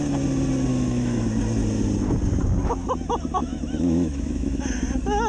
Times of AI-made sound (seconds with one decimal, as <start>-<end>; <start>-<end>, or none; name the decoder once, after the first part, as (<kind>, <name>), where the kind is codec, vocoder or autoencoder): 0.7-1.2 (autoencoder, DAC-VAE); 3.4-4.6